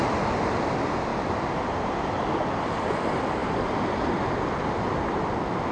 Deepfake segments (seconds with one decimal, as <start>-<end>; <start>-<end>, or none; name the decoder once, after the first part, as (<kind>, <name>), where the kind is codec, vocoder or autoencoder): 1.1-2.2 (vocoder, BigVGAN v2)